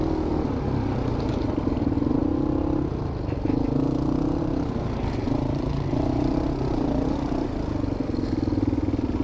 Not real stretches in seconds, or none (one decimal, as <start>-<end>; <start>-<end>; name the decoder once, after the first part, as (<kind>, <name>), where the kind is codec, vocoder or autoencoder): none

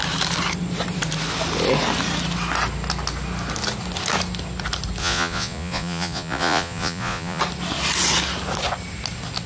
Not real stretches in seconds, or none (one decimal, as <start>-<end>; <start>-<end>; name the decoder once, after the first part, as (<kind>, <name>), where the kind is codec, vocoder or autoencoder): 5.0-7.4 (vocoder, Vocos)

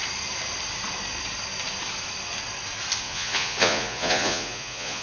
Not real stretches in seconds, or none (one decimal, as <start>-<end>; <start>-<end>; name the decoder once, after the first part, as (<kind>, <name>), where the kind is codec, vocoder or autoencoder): 3.0-5.0 (vocoder, Vocos)